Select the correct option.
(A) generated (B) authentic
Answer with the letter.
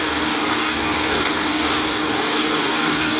A